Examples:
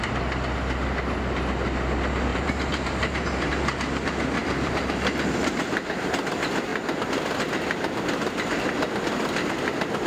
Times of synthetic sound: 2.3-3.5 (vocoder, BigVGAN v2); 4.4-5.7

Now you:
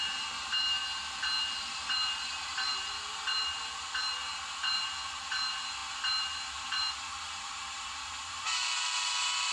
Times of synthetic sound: 0.0-0.8 (vocoder, BigVGAN v2); 1.6-9.5

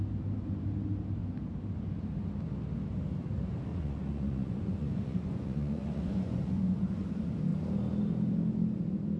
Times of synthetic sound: 3.7-7.1 (vocoder, Vocos)

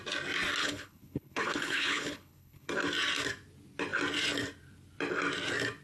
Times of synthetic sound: 0.6-2.7 (codec, HILCodec)

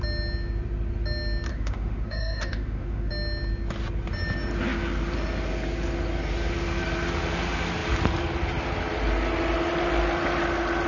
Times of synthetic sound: 1.5-3.1 (autoencoder, DAC-VAE)

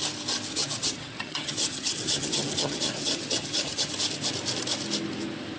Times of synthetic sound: 0.5-3.9 (vocoder, HiFi-GAN)

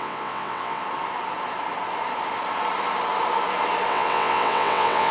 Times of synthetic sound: 0.0-0.8 (vocoder, WaveNeXt); 3.9-5.1

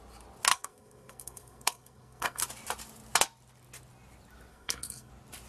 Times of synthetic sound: 0.5-2.4 (codec, SNAC); 4.5-5.1